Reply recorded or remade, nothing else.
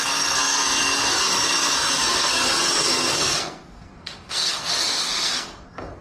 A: remade